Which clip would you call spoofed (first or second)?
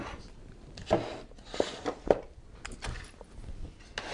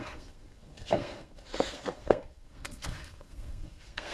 second